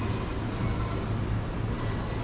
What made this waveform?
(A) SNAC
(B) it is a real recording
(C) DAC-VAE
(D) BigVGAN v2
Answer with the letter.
B